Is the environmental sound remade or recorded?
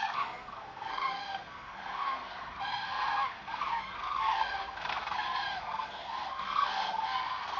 remade